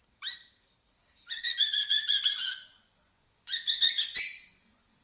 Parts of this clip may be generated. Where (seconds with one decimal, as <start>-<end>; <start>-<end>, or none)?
1.2-5.0